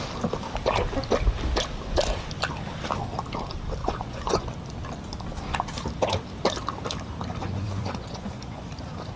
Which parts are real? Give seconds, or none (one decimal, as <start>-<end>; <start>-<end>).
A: 0.0-3.8; 4.5-7.4; 8.7-9.2